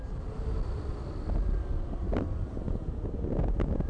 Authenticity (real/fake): real